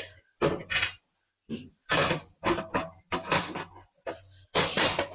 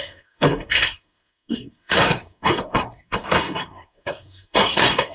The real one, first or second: first